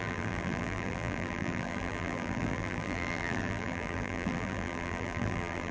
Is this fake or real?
fake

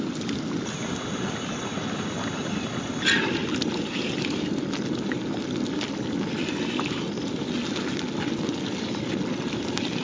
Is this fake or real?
real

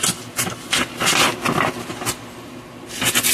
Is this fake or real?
real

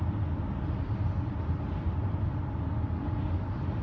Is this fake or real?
real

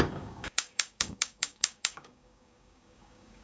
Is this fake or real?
fake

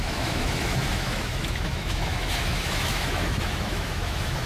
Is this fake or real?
fake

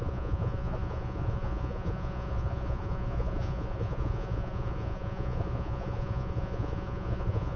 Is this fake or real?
fake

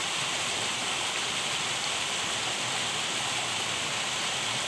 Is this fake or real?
real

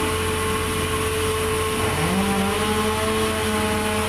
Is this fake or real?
real